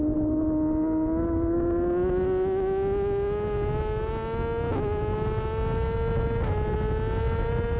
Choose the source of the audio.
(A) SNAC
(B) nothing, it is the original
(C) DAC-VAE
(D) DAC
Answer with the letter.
B